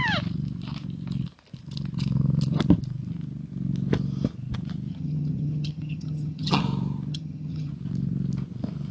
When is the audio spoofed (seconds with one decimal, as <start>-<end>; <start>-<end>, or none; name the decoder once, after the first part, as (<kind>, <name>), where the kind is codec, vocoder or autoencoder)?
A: 4.9-6.6 (vocoder, HiFi-GAN); 7.1-7.7